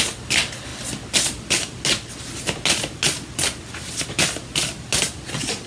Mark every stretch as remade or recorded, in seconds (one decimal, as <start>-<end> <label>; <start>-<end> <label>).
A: 0.0-5.7 recorded